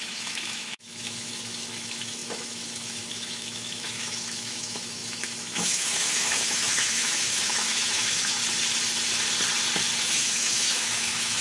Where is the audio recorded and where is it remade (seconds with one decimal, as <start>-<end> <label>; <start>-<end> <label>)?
0.0-8.4 remade; 8.4-10.0 recorded; 10.0-11.4 remade

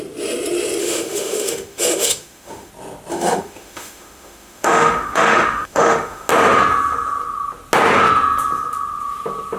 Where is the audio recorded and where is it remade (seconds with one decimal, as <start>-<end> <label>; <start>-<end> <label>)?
0.0-0.8 recorded; 0.8-2.7 remade; 2.7-3.1 recorded; 3.1-6.3 remade; 6.3-9.6 recorded

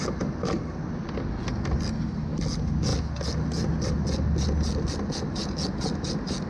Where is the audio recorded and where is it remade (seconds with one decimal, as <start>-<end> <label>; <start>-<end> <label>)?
0.0-6.5 recorded